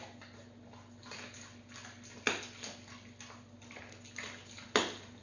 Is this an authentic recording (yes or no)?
yes